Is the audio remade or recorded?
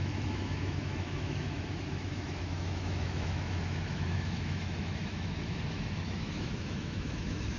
remade